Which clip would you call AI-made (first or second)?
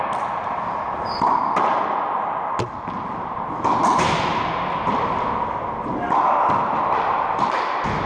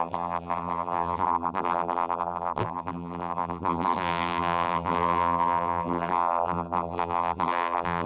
second